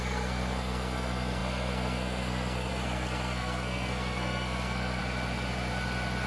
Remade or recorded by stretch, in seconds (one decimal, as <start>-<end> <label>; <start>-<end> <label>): 0.0-5.0 remade; 5.0-6.3 recorded